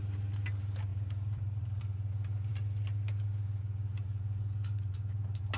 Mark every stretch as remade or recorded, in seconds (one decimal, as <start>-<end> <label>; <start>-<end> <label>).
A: 0.0-0.9 recorded; 0.9-1.8 remade; 1.8-5.6 recorded